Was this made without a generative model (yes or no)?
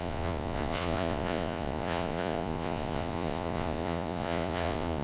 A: no